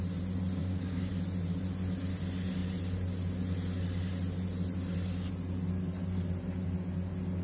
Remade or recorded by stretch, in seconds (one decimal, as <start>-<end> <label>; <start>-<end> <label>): 0.0-0.6 recorded; 0.6-1.1 remade; 1.1-7.4 recorded